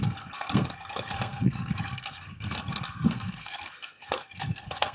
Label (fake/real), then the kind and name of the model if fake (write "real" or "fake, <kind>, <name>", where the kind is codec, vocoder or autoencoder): fake, codec, SNAC